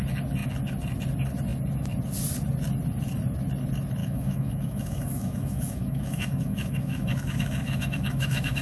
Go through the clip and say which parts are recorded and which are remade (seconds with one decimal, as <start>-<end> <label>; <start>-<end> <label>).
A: 0.0-4.0 recorded; 4.0-8.6 remade